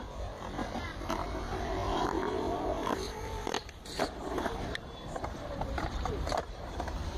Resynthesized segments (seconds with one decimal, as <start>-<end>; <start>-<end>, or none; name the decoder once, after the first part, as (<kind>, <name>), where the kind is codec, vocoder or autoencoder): 0.0-7.2 (vocoder, BigVGAN v2)